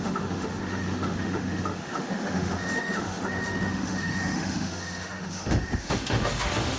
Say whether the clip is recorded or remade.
remade